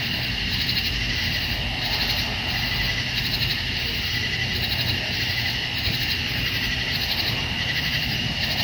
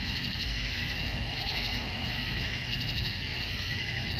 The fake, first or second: second